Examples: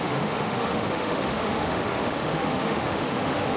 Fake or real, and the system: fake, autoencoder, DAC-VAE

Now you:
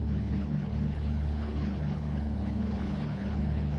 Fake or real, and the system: fake, codec, HILCodec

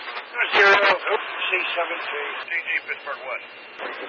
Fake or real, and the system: real